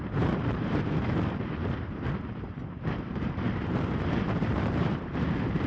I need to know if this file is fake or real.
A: fake